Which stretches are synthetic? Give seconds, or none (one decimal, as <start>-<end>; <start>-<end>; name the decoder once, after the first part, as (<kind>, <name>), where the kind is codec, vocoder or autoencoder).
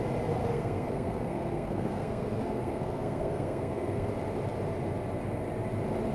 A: 0.4-4.1 (codec, SNAC)